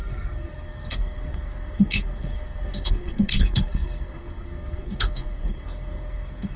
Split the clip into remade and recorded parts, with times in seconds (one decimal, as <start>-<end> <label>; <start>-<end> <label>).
0.0-6.6 remade

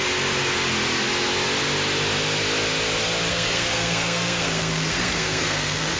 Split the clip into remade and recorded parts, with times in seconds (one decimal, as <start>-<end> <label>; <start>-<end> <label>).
0.0-3.3 recorded; 3.3-6.0 remade